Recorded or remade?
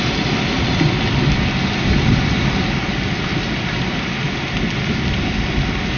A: recorded